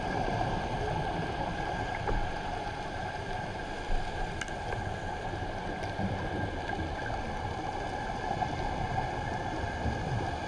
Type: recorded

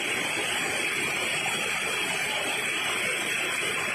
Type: recorded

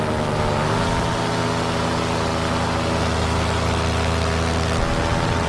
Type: recorded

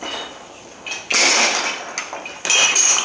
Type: recorded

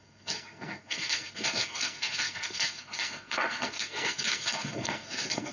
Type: remade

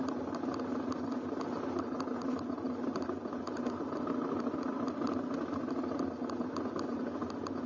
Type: recorded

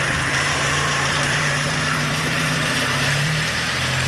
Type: remade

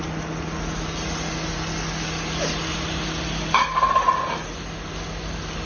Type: recorded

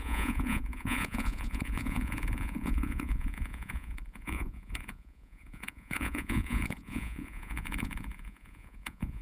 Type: remade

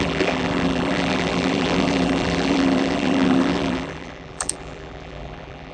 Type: remade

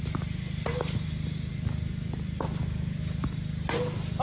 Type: recorded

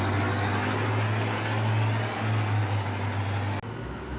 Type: recorded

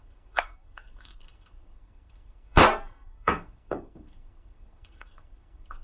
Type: remade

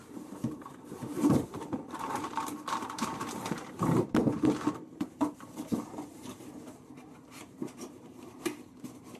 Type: remade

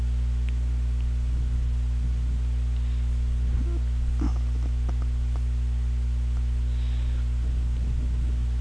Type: recorded